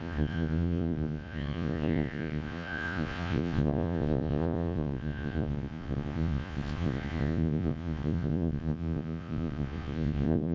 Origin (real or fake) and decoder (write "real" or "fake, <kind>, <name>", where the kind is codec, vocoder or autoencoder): fake, vocoder, Vocos